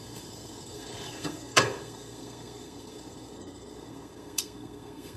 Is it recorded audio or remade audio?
remade